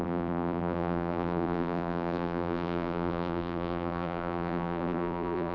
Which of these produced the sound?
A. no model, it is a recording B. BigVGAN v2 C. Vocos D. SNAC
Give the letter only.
B